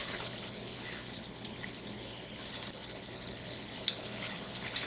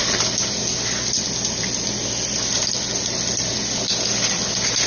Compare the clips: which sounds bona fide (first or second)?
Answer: second